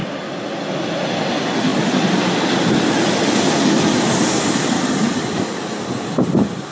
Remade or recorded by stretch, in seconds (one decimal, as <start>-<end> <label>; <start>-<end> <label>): 0.0-6.7 recorded